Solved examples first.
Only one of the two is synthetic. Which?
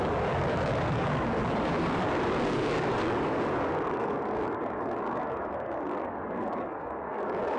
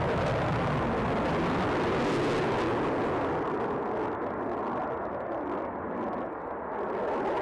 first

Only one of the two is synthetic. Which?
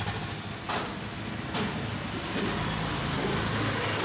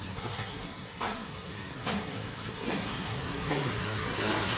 second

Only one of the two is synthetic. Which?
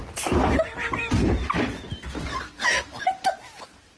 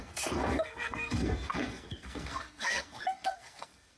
second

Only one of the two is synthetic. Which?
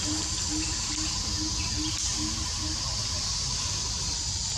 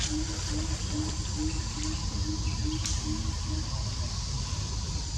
second